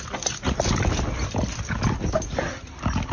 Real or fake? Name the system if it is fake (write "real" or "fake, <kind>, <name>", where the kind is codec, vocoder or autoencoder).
real